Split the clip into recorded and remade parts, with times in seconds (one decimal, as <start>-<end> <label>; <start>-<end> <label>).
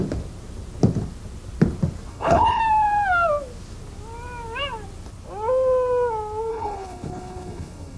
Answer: 0.0-2.1 recorded; 2.1-2.6 remade; 2.6-6.5 recorded; 6.5-8.0 remade